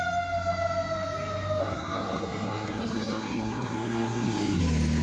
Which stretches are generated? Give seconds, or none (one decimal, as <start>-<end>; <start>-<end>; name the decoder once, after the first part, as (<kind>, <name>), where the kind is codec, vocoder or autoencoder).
1.6-4.6 (codec, SNAC)